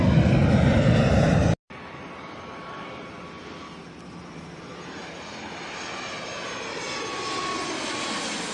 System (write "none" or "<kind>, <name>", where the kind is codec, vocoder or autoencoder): none